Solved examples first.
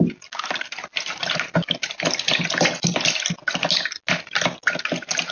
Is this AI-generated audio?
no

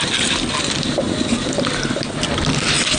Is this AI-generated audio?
no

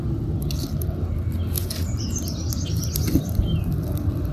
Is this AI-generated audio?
no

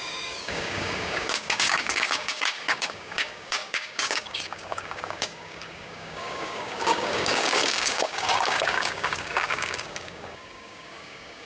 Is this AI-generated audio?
yes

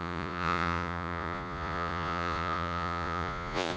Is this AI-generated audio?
yes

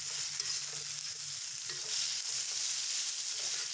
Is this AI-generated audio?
no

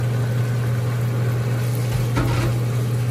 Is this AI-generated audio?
no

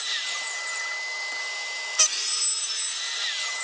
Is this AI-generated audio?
no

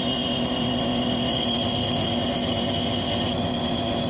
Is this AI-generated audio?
no